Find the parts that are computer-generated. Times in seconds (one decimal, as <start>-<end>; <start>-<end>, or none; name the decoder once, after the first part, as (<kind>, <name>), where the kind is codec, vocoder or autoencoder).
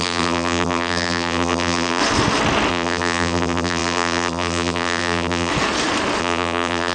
0.0-2.0 (vocoder, BigVGAN v2); 2.7-5.5; 6.2-6.9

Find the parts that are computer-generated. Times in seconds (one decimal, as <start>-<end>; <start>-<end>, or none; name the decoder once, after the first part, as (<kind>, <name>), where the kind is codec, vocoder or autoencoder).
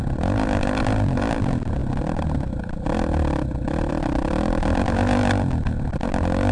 none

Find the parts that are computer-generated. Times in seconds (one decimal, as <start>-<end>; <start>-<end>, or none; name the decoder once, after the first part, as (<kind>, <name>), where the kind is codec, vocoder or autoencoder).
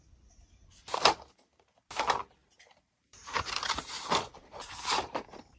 2.4-5.6 (vocoder, BigVGAN v2)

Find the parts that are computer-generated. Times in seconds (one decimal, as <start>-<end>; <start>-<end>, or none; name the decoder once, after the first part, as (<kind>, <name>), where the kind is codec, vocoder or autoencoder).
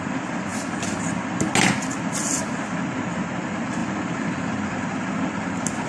3.8-5.1 (vocoder, BigVGAN v2)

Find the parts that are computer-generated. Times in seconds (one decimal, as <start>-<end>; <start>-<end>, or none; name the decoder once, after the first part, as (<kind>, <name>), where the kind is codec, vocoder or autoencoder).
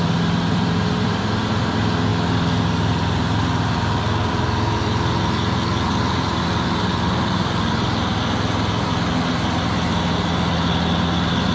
0.5-1.2 (vocoder, BigVGAN v2)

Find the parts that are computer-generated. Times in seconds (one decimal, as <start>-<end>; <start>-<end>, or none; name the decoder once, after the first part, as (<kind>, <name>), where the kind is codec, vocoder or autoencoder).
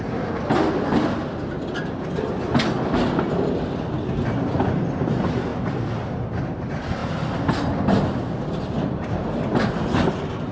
none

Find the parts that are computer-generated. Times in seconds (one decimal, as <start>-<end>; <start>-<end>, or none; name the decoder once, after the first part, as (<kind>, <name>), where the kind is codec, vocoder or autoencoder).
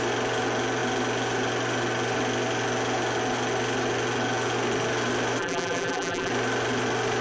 5.4-6.3 (vocoder, BigVGAN v2)